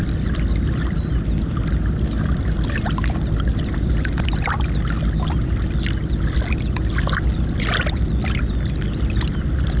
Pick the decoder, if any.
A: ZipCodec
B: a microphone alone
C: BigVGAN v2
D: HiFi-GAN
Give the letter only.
B